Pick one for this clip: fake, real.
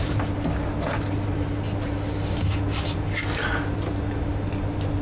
real